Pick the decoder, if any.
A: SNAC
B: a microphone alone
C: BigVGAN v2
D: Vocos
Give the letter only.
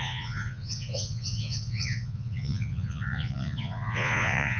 D